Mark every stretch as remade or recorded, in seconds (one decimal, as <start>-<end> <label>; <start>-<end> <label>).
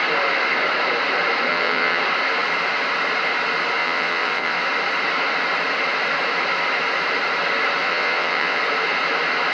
0.0-1.5 recorded; 1.5-2.0 remade; 2.0-3.8 recorded; 3.8-4.6 remade; 4.6-7.8 recorded; 7.8-8.6 remade; 8.6-9.5 recorded